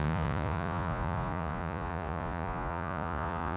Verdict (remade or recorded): remade